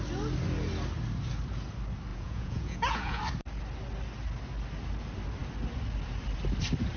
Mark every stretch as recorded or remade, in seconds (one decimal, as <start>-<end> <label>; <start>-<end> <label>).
0.0-2.1 recorded; 2.1-3.2 remade; 3.2-7.0 recorded